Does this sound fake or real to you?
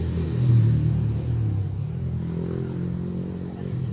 real